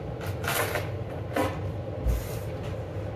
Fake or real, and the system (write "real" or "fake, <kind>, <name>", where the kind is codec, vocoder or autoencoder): real